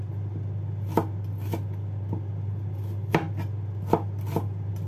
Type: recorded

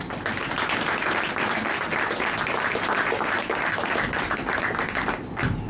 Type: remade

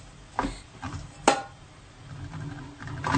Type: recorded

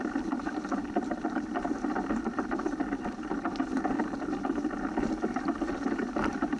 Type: remade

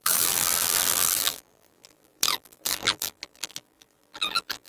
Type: remade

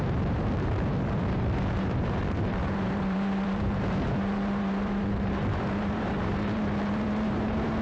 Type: remade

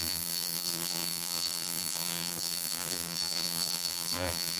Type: remade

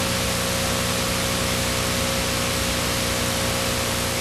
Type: recorded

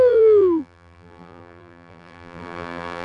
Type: remade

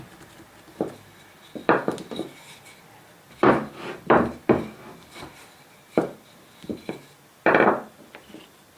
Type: remade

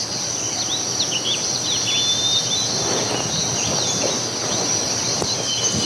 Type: recorded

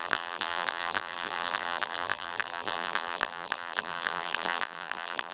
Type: remade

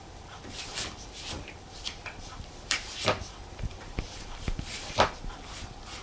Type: remade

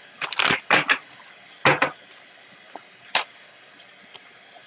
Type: recorded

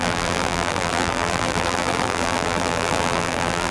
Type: remade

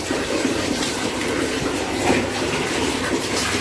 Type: remade